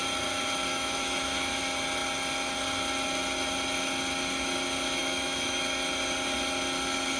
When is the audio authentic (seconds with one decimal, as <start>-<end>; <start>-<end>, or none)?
0.0-0.7; 1.6-5.0; 5.6-7.2

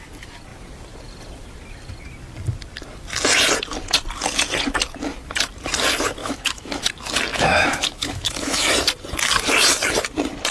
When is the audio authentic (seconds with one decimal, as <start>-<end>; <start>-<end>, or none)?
0.0-6.2; 6.8-7.3; 8.7-10.5

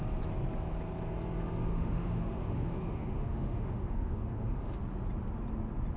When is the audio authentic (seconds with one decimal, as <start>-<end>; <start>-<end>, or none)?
0.0-1.7; 4.8-6.0